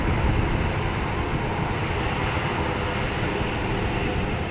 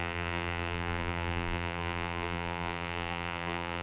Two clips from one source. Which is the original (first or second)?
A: first